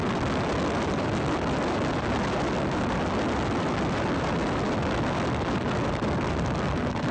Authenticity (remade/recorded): recorded